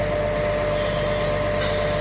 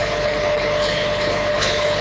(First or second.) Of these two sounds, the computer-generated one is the second